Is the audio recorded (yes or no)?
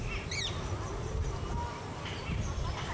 yes